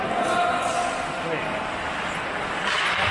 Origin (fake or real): real